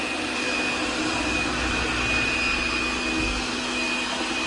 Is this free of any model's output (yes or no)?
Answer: yes